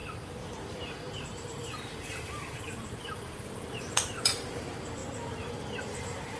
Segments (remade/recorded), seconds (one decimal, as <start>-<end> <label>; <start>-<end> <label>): 0.0-5.0 remade; 5.0-6.0 recorded; 6.0-6.4 remade